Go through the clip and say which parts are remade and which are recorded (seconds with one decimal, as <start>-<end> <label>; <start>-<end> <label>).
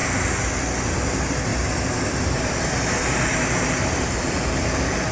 0.0-5.1 remade